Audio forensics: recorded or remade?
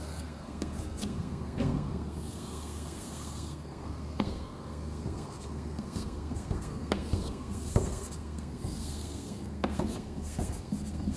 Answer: remade